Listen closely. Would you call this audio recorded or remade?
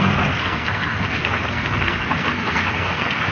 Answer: remade